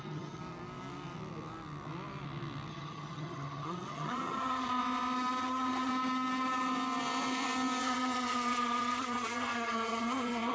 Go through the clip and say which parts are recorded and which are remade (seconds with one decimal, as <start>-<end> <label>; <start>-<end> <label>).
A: 0.0-0.4 remade; 0.4-2.7 recorded; 2.7-4.8 remade; 4.8-5.4 recorded; 5.4-5.9 remade; 5.9-7.8 recorded; 7.8-10.5 remade